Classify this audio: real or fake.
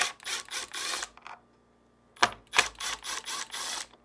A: real